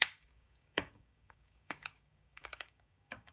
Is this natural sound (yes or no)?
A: no